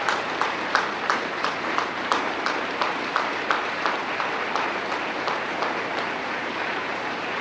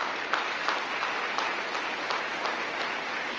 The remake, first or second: first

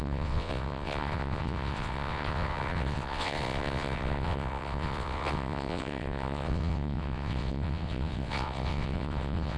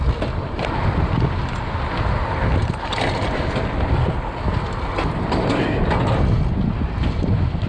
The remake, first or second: first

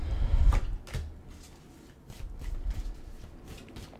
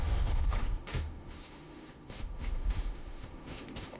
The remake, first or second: second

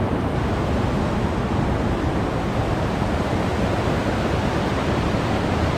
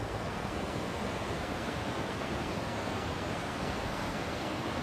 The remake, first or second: second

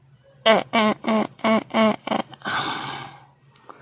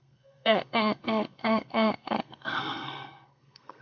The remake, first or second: second